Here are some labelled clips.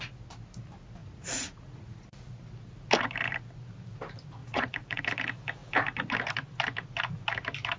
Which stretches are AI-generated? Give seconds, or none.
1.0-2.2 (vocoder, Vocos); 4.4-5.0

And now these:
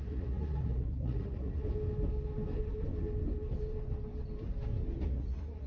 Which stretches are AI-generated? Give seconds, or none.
0.0-1.6 (vocoder, Vocos); 5.0-5.7